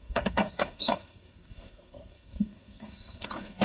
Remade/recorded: remade